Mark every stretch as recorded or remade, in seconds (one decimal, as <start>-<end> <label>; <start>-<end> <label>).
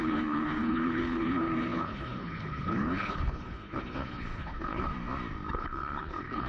0.0-4.9 remade; 4.9-5.5 recorded; 5.5-6.5 remade